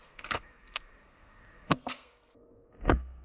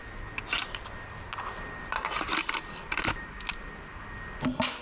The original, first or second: second